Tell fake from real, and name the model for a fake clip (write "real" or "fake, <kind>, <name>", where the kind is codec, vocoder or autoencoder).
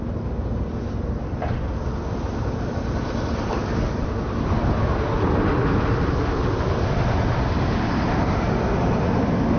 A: real